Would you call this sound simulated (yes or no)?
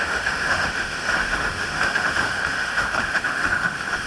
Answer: yes